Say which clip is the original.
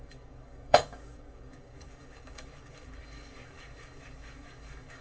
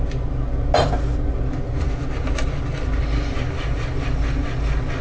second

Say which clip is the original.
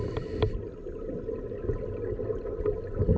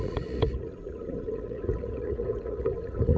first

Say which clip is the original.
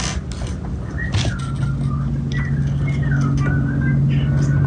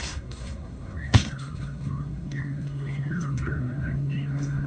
first